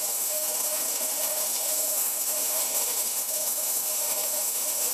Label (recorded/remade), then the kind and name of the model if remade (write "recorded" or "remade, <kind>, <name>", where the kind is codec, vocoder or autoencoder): remade, autoencoder, DAC-VAE